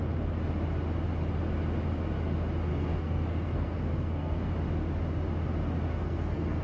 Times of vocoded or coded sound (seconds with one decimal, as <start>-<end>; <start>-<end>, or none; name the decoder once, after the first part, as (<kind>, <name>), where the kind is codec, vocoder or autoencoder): 2.7-4.5 (codec, SNAC); 5.9-6.6